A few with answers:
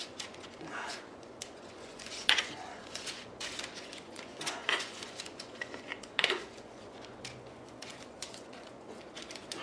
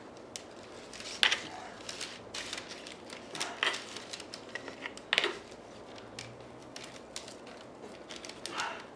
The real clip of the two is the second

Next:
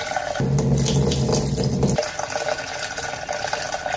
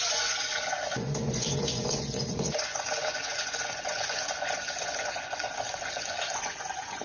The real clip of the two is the first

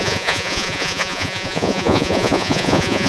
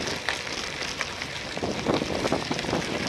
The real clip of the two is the second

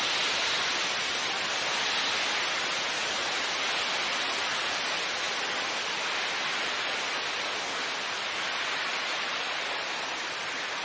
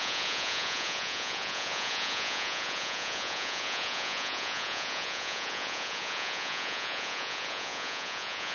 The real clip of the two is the first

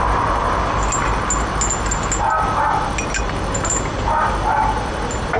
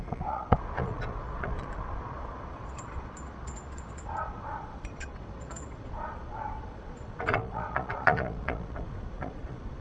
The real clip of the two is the first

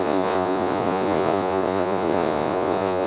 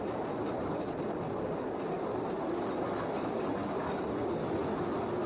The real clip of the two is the second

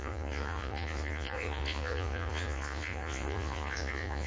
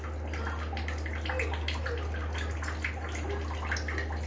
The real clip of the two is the second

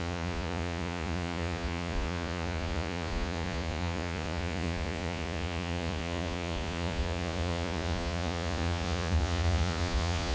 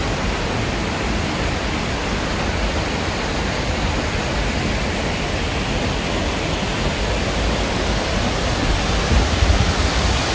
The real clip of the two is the second